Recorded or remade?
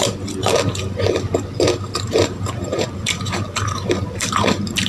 remade